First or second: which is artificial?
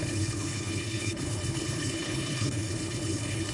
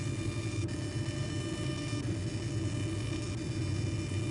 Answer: first